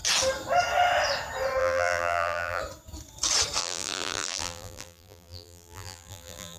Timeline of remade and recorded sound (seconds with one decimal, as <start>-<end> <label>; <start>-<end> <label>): 0.0-1.6 recorded; 1.6-2.6 remade; 2.6-3.6 recorded; 3.6-6.6 remade

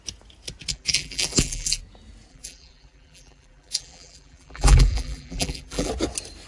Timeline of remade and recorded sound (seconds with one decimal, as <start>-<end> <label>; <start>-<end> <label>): 0.0-0.7 recorded; 0.7-1.8 remade; 1.8-2.3 recorded; 2.3-5.9 remade; 5.9-6.5 recorded